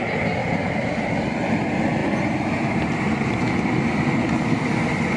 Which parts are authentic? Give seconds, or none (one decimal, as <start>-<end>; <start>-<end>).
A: 0.0-0.4; 1.2-2.0